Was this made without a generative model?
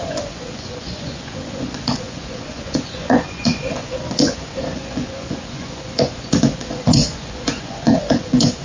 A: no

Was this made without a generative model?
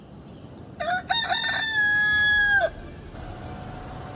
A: yes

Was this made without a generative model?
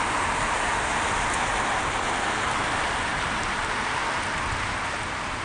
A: yes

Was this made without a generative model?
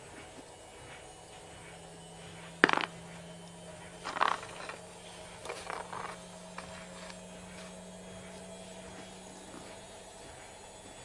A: yes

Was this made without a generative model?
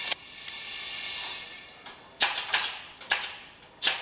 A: yes